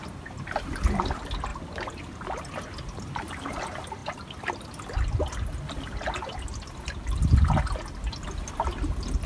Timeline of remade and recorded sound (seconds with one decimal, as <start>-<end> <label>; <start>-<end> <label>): 0.0-9.3 recorded